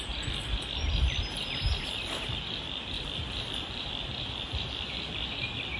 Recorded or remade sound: recorded